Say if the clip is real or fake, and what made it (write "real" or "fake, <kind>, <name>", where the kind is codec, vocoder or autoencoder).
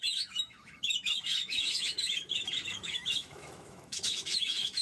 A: fake, autoencoder, DAC-VAE